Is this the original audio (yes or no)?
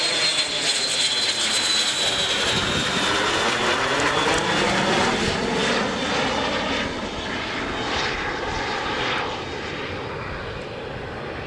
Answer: yes